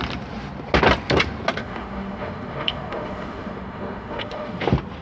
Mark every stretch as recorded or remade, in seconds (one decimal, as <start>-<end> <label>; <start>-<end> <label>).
0.0-1.6 recorded; 1.6-4.6 remade; 4.6-5.0 recorded